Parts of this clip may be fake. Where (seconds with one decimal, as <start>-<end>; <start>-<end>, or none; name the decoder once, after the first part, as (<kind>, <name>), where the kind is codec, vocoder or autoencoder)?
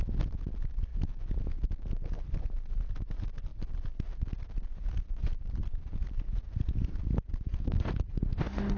none